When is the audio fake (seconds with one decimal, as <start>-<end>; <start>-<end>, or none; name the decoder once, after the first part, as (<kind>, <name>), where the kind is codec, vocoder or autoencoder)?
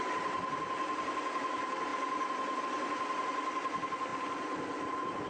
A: none